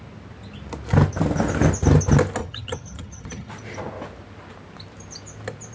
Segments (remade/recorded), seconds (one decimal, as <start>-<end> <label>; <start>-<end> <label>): 0.0-2.4 recorded; 2.4-3.5 remade; 3.5-5.7 recorded